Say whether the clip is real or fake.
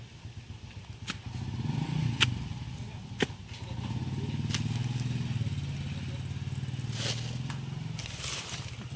real